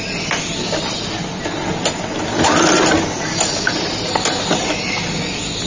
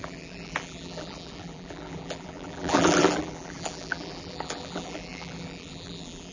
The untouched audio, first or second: first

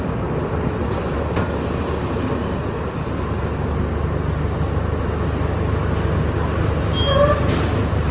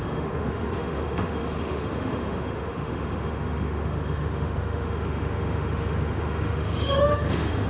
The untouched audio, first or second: first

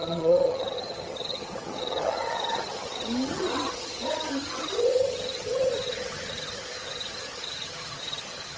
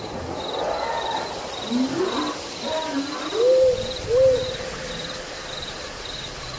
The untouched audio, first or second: second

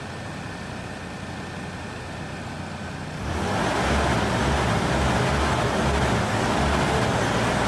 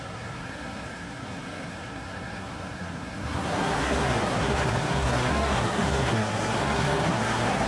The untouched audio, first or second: first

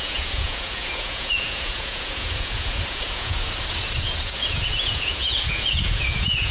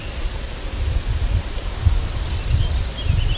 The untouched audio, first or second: second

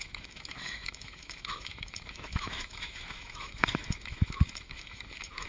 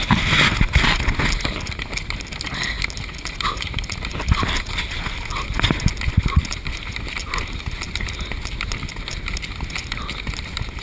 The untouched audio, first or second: second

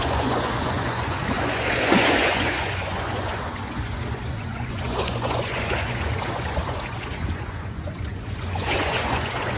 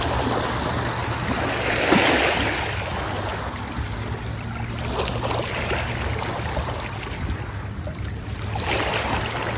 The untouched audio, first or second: second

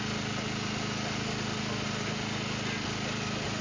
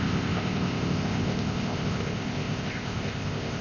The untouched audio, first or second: first